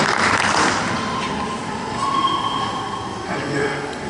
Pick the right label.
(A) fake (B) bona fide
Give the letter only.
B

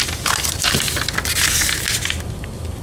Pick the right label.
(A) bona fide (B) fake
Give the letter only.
A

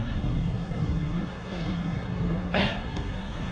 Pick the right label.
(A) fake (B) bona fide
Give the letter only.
A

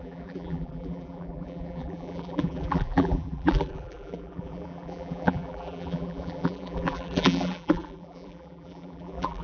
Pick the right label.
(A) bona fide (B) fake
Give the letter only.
B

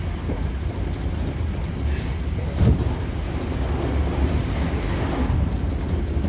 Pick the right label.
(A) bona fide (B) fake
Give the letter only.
A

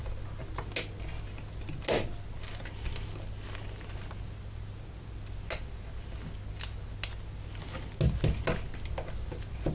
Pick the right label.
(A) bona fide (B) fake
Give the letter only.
A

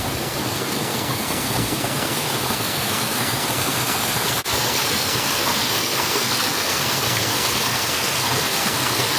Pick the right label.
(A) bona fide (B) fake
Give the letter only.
B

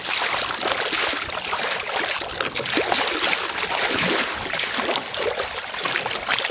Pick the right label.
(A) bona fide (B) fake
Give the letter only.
A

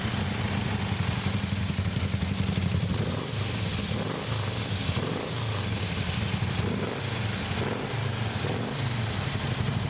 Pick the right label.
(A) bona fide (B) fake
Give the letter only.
A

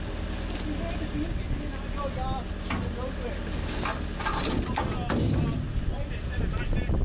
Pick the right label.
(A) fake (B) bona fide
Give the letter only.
B